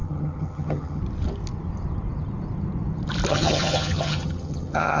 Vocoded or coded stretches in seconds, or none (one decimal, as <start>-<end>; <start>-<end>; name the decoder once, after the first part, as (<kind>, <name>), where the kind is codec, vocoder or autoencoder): 0.0-1.0 (vocoder, HiFi-GAN); 3.3-5.0

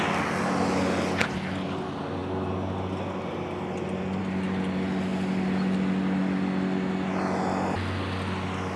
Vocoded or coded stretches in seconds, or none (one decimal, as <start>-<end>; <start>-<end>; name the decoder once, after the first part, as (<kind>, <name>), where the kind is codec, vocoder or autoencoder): none

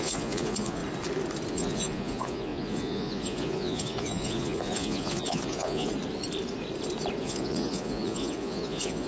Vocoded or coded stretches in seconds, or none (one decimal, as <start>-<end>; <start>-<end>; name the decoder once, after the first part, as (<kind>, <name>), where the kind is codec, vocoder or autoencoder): 0.0-0.8 (vocoder, Vocos); 1.5-5.9; 7.2-9.1

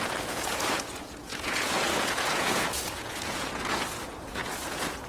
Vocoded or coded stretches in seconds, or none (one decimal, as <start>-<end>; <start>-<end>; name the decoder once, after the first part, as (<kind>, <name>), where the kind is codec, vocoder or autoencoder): 0.0-5.1 (vocoder, Vocos)

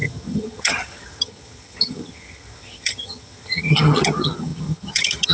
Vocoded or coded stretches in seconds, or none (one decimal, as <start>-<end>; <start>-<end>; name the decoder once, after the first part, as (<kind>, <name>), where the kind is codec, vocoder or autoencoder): 0.0-5.3 (vocoder, HiFi-GAN)

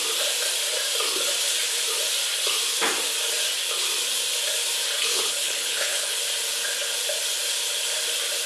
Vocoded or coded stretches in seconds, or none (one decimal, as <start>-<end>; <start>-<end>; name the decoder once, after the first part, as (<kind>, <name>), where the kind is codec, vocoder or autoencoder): 5.1-6.2 (codec, HILCodec)

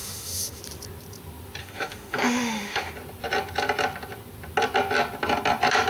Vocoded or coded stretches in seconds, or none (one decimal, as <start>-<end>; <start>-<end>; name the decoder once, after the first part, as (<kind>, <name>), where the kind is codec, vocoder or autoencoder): 0.0-0.6 (autoencoder, DAC-VAE); 1.6-2.9

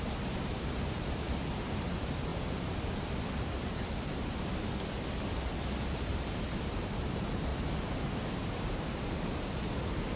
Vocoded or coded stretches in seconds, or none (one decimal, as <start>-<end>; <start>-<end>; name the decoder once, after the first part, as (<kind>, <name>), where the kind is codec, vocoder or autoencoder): 0.0-2.3 (vocoder, BigVGAN v2); 5.9-7.5; 8.0-10.2